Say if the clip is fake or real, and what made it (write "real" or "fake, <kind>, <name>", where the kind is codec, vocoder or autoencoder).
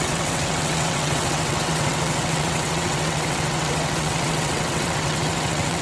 fake, vocoder, WaveNeXt